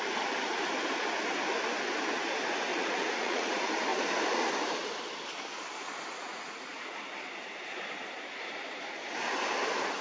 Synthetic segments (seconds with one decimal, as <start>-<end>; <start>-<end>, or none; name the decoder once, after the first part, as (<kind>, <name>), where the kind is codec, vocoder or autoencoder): 2.7-3.5 (vocoder, Vocos); 6.2-6.7